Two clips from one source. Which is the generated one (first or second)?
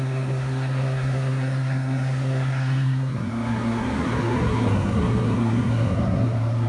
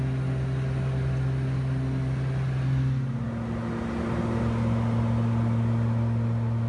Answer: first